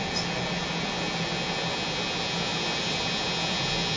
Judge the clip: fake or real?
real